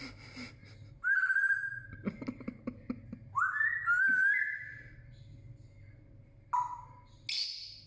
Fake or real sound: real